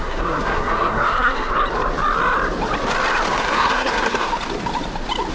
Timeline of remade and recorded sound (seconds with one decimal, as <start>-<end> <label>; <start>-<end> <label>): 0.0-1.5 remade; 1.5-3.4 recorded; 3.4-4.3 remade; 4.3-5.3 recorded

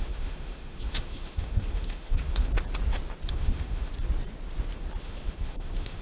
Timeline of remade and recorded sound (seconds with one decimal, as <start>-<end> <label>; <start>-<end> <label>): 0.0-2.5 remade; 2.5-3.3 recorded; 3.3-3.9 remade; 3.9-5.0 recorded; 5.0-6.0 remade

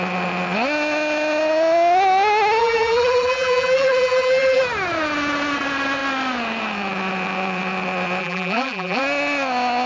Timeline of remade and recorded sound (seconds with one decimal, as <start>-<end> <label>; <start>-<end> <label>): 0.0-2.6 recorded; 2.6-4.6 remade; 4.6-8.2 recorded; 8.2-9.0 remade; 9.0-9.9 recorded

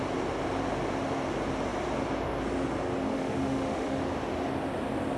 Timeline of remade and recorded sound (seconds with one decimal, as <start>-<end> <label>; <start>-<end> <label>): 0.0-3.1 recorded; 3.1-4.0 remade; 4.0-5.2 recorded

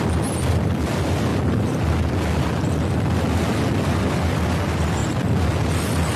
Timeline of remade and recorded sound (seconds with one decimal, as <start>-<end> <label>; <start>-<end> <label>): 0.0-6.2 recorded